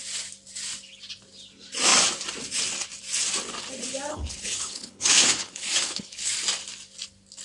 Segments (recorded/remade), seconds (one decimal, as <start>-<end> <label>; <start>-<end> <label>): 0.0-4.1 recorded; 4.1-6.3 remade; 6.3-7.4 recorded